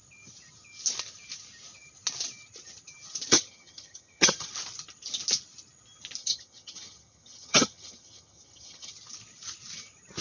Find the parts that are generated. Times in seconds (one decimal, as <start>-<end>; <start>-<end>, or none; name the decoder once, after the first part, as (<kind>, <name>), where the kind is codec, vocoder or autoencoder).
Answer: 3.3-4.5 (vocoder, HiFi-GAN); 6.2-8.9